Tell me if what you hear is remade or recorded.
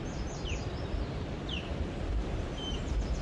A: remade